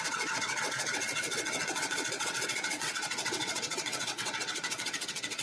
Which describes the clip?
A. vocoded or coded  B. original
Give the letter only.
A